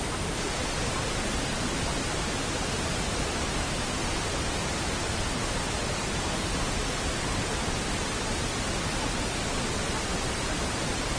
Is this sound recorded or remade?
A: recorded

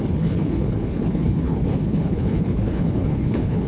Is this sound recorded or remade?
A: remade